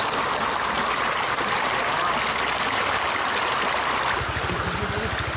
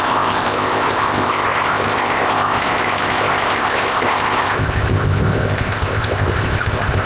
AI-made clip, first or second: second